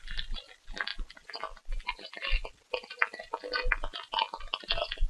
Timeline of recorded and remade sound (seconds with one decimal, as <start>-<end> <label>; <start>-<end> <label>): 0.0-5.1 recorded